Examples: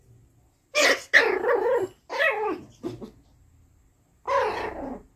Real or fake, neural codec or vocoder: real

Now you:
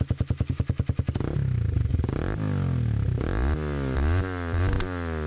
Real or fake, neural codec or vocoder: real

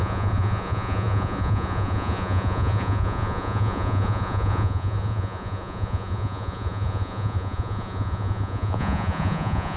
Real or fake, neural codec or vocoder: fake, vocoder, Vocos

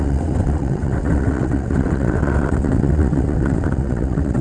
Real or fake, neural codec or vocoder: fake, vocoder, WaveNeXt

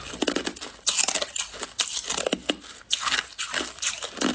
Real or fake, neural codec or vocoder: real